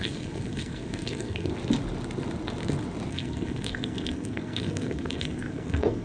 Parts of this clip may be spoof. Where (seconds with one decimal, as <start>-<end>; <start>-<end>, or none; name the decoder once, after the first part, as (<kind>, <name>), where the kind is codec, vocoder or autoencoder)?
0.0-1.5 (codec, SNAC); 3.1-6.0